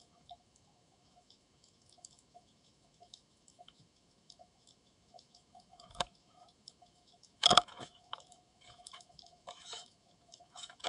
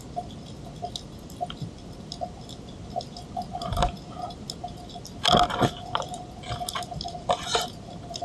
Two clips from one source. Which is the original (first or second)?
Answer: second